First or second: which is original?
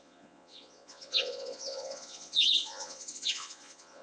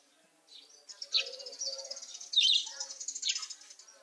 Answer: second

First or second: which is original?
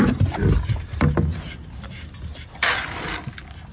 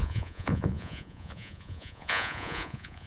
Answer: first